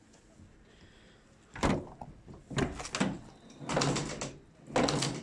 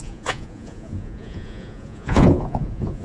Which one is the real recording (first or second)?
first